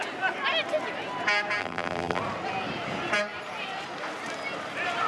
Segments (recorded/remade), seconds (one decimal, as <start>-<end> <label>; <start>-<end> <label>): 0.0-1.6 recorded; 1.6-2.2 remade; 2.2-5.1 recorded